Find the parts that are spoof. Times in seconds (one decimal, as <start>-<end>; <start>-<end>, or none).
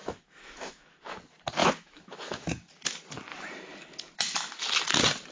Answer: 0.0-1.2; 1.6-2.7